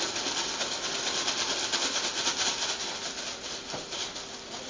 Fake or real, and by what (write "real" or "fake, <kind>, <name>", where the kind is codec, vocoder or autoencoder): real